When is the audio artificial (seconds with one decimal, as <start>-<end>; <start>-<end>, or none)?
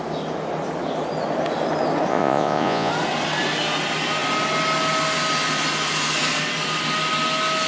2.1-2.9